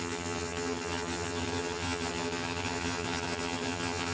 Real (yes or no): no